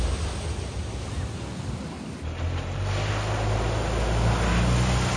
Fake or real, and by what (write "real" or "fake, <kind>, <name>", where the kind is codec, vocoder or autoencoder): real